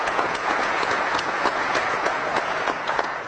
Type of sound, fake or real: fake